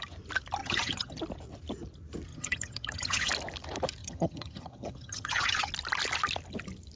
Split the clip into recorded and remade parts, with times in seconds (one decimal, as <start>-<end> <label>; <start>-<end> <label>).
0.0-0.6 recorded; 0.6-1.2 remade; 1.2-2.3 recorded; 2.3-3.3 remade; 3.3-4.0 recorded; 4.0-5.7 remade; 5.7-7.0 recorded

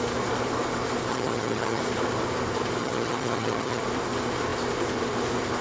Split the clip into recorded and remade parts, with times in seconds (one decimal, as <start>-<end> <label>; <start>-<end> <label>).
0.0-1.1 recorded; 1.1-1.8 remade; 1.8-2.8 recorded; 2.8-3.8 remade; 3.8-5.6 recorded

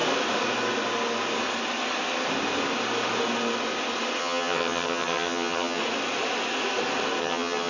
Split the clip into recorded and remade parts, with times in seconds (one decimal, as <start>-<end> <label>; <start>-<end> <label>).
0.0-4.2 recorded; 4.2-5.8 remade; 5.8-7.2 recorded; 7.2-7.7 remade

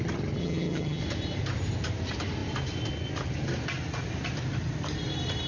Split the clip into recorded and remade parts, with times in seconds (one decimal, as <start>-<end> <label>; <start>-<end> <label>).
0.0-0.4 recorded; 0.4-1.0 remade; 1.0-5.5 recorded

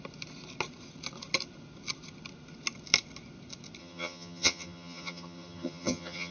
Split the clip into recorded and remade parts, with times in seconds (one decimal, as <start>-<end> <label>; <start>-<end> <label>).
0.0-3.8 recorded; 3.8-6.3 remade